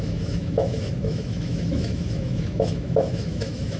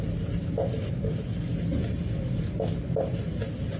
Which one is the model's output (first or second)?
first